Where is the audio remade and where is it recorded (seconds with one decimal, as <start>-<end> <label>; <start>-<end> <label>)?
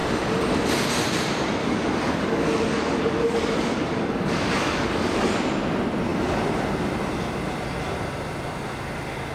0.0-1.6 recorded; 1.6-5.3 remade; 5.3-9.3 recorded